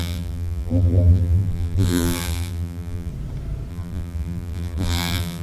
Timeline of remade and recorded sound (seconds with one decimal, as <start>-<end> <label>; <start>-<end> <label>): 0.0-3.1 remade; 3.1-3.7 recorded; 3.7-5.4 remade